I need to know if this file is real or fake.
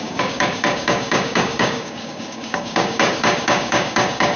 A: fake